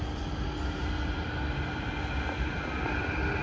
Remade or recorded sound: recorded